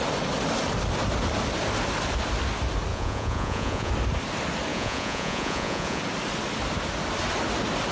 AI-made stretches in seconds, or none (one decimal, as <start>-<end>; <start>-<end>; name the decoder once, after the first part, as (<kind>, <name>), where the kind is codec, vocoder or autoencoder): 2.9-3.9 (vocoder, Vocos); 4.7-6.0